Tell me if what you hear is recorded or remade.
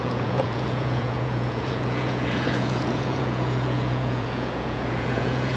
remade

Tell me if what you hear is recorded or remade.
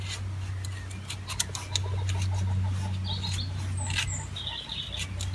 recorded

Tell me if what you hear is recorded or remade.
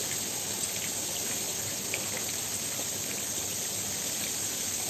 recorded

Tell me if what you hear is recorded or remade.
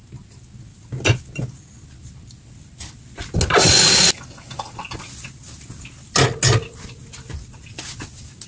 recorded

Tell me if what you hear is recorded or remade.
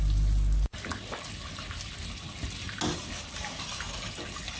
recorded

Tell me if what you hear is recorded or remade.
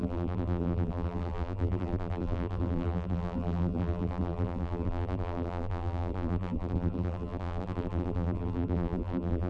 remade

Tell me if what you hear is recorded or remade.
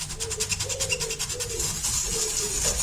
recorded